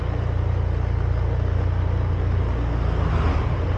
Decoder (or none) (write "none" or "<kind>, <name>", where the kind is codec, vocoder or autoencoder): none